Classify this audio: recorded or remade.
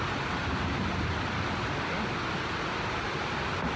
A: recorded